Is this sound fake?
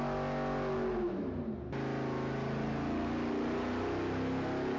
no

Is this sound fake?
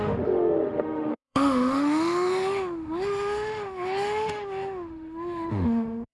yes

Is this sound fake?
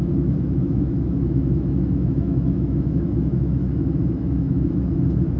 yes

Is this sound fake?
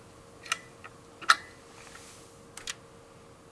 no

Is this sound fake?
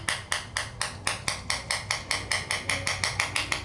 no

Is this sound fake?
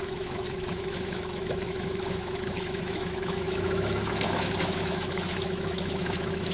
yes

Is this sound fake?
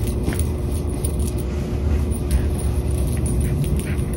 no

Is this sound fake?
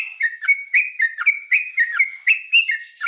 no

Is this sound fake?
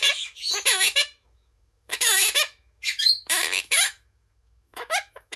yes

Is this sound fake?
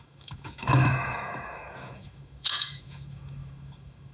yes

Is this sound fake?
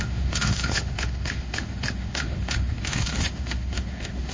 yes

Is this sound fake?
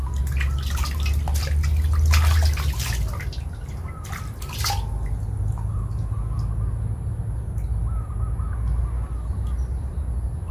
no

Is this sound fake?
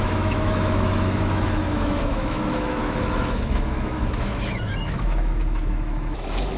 yes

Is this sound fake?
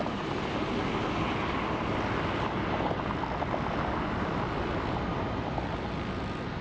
no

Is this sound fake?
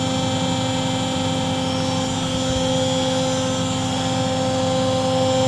no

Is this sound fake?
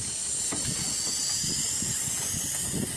no